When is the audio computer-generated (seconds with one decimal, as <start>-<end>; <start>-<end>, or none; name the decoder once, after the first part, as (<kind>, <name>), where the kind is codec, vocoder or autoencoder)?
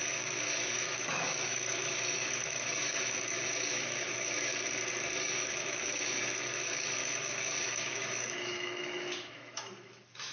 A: 0.0-4.5 (autoencoder, DAC-VAE); 5.2-10.3